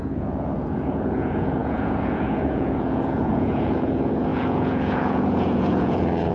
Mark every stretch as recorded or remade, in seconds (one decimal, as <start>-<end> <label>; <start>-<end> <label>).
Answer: 0.0-6.3 remade